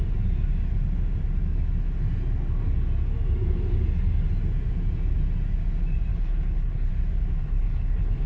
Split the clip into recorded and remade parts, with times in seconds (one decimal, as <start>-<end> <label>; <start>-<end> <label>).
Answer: 0.0-6.1 recorded; 6.1-6.9 remade; 6.9-7.4 recorded; 7.4-8.3 remade